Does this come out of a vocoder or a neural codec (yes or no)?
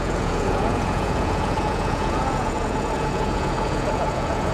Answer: yes